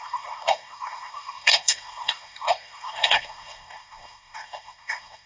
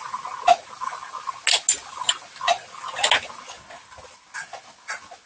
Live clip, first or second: second